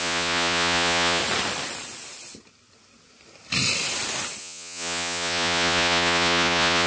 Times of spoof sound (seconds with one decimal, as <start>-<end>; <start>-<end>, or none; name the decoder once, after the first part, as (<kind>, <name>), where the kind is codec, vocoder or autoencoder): 0.0-1.2 (vocoder, Vocos); 4.4-6.9